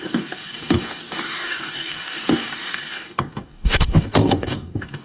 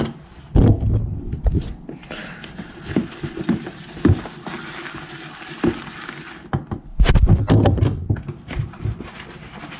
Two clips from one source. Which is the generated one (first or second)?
first